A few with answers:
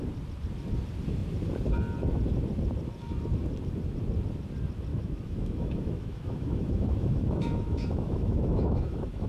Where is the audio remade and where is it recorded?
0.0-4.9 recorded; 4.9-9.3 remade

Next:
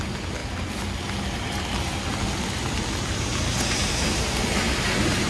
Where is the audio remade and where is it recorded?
0.0-5.3 recorded